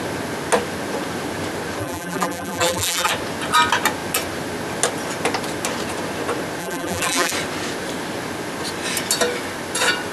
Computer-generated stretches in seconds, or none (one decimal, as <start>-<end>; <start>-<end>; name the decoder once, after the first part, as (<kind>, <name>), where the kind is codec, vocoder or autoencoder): 1.8-3.1 (vocoder, BigVGAN v2); 6.6-7.3